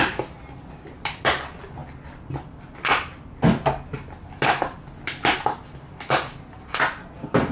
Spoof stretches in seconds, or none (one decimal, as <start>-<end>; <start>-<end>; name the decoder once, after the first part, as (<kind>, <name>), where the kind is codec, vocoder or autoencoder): none